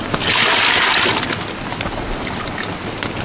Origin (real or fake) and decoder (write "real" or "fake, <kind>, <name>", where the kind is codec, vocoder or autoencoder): real